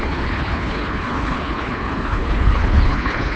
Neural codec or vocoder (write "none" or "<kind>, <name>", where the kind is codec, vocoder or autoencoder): codec, HILCodec